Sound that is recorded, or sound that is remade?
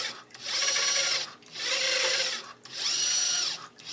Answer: recorded